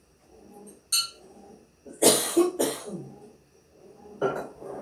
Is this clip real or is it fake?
real